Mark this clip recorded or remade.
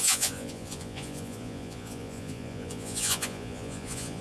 remade